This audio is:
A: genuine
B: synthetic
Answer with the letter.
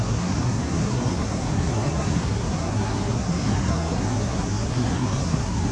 B